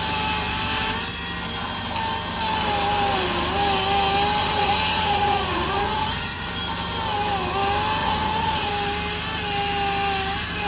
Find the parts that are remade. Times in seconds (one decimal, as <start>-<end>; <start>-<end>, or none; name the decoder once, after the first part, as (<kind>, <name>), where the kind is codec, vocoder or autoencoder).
4.4-6.5 (vocoder, Vocos); 8.0-8.7

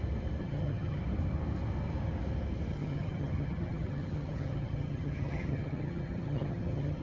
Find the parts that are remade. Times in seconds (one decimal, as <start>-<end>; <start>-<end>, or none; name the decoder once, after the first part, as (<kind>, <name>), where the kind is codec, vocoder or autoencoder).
0.4-1.0 (vocoder, HiFi-GAN); 2.7-7.0

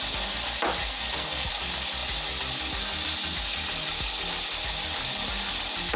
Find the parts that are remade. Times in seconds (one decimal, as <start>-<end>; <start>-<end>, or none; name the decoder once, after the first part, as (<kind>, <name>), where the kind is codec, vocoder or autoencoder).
0.8-1.5 (codec, SNAC)

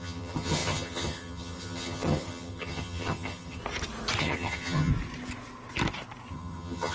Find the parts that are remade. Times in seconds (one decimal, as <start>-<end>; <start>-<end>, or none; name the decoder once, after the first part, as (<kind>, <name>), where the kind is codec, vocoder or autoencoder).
0.0-3.6 (vocoder, HiFi-GAN); 4.2-4.9; 6.3-6.9

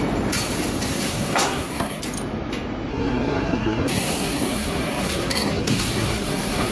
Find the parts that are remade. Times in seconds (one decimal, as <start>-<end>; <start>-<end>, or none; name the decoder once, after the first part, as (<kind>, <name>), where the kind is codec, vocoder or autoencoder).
0.9-2.0 (codec, SNAC); 2.9-6.7